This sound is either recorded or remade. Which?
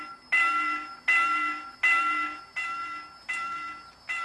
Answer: recorded